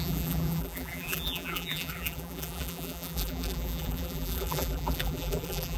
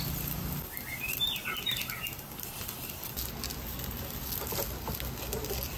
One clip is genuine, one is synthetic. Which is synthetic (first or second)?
first